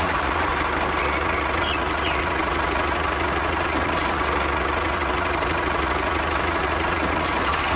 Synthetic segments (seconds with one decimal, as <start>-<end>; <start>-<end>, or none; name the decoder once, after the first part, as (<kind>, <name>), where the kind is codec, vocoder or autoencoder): 0.0-0.5 (vocoder, Vocos); 1.0-7.8